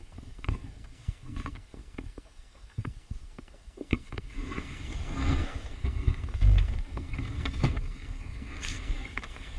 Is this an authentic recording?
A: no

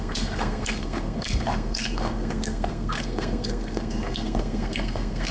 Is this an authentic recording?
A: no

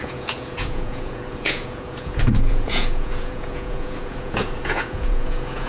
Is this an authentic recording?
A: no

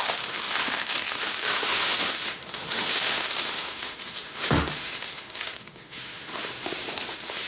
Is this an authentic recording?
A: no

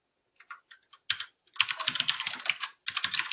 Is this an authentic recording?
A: yes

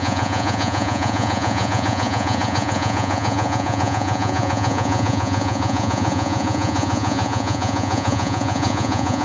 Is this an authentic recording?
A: no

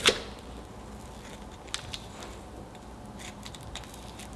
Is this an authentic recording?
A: yes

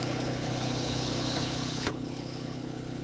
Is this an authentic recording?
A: no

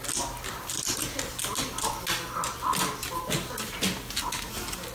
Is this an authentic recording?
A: yes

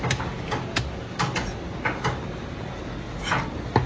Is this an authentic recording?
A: yes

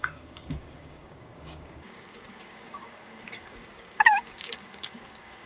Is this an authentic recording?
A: no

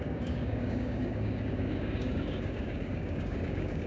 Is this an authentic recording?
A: no